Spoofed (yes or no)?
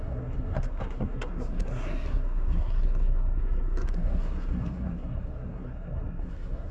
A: yes